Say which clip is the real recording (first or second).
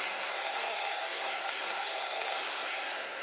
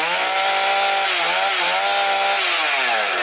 second